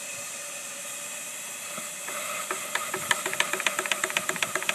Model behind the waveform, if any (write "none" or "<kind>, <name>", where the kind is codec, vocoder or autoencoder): none